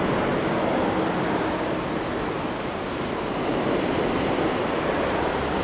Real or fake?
real